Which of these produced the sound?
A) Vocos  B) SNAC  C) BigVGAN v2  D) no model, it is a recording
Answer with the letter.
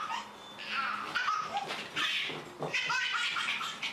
D